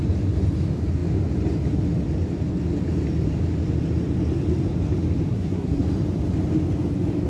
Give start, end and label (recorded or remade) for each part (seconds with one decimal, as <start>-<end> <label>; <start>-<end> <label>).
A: 0.0-5.3 recorded; 5.3-5.8 remade; 5.8-7.3 recorded